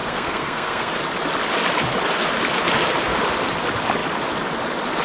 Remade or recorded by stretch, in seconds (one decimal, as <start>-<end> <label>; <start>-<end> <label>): 0.0-0.9 remade; 0.9-5.0 recorded

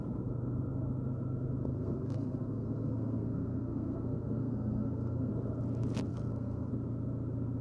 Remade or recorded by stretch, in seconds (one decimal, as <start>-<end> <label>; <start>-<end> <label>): 0.0-1.7 recorded; 1.7-5.3 remade; 5.3-6.1 recorded; 6.1-6.7 remade; 6.7-7.6 recorded

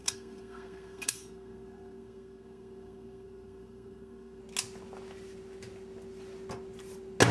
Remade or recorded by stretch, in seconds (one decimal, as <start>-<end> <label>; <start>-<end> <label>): 0.0-4.4 remade; 4.4-7.3 recorded

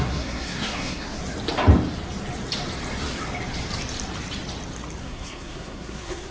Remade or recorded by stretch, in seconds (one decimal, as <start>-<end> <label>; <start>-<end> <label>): 0.0-1.2 remade; 1.2-5.0 recorded; 5.0-6.3 remade

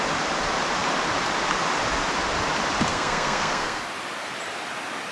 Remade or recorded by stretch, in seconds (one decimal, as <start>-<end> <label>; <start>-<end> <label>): 0.0-2.9 recorded; 2.9-3.8 remade; 3.8-5.1 recorded